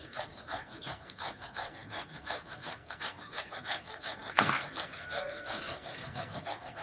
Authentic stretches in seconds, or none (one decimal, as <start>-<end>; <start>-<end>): none